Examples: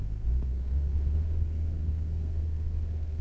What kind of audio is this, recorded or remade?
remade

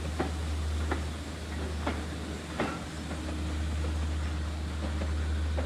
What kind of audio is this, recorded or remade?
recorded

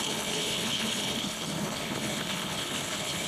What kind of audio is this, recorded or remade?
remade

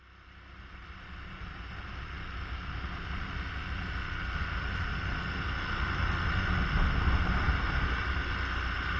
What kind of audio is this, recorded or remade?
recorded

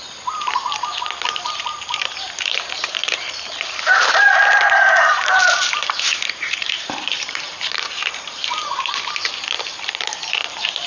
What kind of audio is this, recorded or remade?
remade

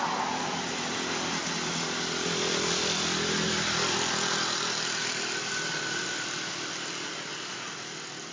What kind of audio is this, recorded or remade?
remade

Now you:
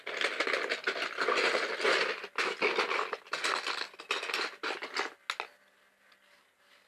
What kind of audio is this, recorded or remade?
recorded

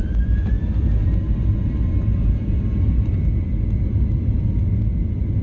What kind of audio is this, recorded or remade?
recorded